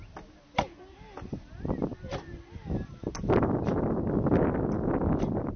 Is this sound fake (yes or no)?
no